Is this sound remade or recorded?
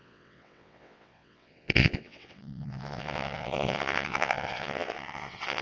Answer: remade